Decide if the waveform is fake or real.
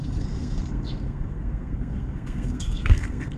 fake